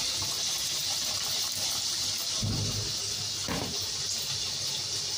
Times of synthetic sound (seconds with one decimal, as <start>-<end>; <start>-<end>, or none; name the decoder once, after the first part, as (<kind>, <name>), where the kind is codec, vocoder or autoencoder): none